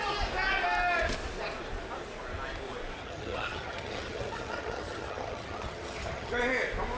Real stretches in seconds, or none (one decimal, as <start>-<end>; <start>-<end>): 0.0-3.0; 6.4-7.0